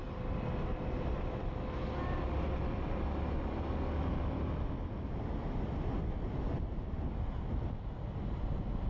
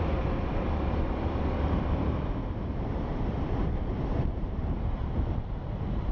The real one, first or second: first